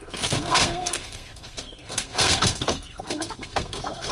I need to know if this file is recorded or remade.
remade